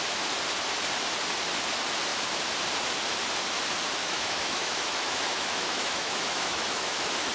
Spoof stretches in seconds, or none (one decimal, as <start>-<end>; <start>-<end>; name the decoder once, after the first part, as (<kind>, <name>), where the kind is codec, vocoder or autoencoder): 4.0-7.3 (autoencoder, DAC-VAE)